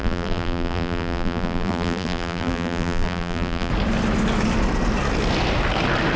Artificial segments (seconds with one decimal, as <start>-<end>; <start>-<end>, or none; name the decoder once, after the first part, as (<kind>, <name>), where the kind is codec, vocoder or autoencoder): 0.0-3.7 (vocoder, BigVGAN v2)